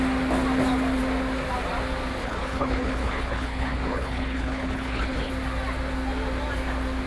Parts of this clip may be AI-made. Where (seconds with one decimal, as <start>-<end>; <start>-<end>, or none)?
2.2-5.3